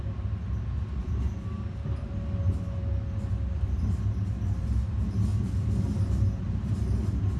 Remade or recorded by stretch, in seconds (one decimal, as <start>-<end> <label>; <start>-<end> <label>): 0.0-5.3 recorded; 5.3-6.7 remade; 6.7-7.4 recorded